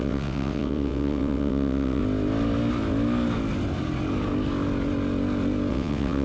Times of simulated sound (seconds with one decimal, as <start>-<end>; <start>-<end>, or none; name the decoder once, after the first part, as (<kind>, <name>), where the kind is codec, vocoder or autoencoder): 0.0-2.0 (vocoder, WaveNeXt); 5.7-6.2